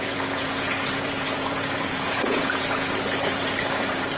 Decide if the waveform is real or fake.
fake